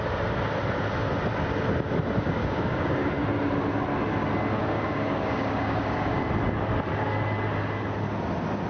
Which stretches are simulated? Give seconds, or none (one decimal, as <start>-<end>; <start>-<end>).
2.4-3.1; 4.6-6.2